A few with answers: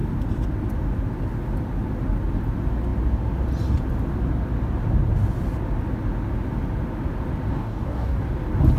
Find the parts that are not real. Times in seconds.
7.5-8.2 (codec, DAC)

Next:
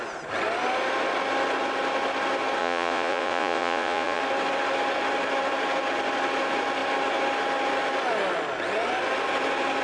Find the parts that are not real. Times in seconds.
2.6-4.2 (vocoder, Vocos)

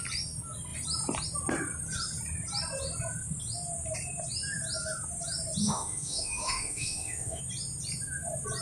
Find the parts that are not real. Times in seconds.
5.6-7.4 (autoencoder, DAC-VAE)

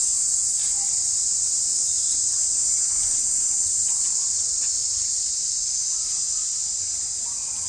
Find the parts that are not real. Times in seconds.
0.6-1.1 (vocoder, BigVGAN v2); 1.7-4.1; 4.8-5.7

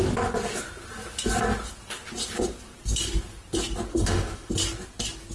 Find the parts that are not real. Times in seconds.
3.9-4.5 (autoencoder, DAC-VAE)

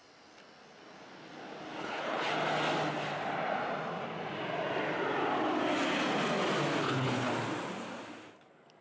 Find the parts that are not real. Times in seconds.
1.8-2.3 (codec, HILCodec); 6.8-7.3